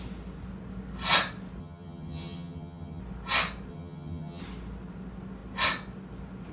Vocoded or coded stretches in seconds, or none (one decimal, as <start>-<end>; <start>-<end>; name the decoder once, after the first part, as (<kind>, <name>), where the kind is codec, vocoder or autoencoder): 1.6-3.0 (vocoder, HiFi-GAN); 3.7-4.4